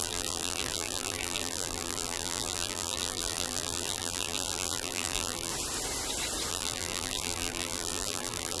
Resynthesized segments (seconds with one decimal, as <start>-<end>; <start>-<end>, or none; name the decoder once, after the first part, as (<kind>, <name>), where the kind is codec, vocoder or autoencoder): 0.0-5.5 (vocoder, BigVGAN v2); 6.5-8.6